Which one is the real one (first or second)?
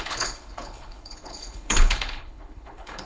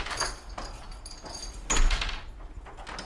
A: second